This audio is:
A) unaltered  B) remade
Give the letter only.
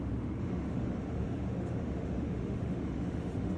B